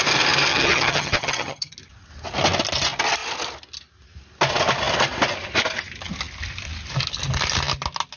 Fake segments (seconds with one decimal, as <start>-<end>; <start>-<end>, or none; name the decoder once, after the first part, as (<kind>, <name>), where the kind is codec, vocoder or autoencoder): 0.5-1.7 (vocoder, HiFi-GAN)